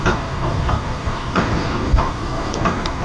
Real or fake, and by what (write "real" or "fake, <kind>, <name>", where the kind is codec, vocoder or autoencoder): fake, codec, DAC